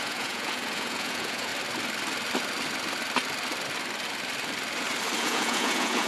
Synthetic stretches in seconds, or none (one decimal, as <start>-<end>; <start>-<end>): 0.0-1.5; 5.2-6.1